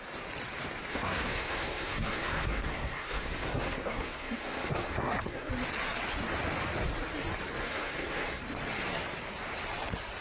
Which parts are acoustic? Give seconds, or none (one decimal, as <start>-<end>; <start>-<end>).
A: 0.0-0.9; 5.5-7.6; 8.4-10.2